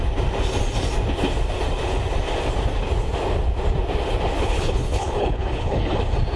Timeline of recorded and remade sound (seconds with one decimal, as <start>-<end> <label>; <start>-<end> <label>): 0.0-4.4 recorded; 4.4-6.0 remade; 6.0-6.4 recorded